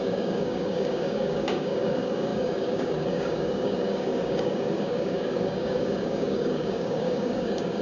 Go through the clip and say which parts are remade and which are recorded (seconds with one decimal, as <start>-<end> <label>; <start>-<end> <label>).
0.0-7.8 remade